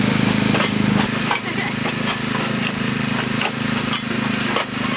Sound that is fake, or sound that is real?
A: real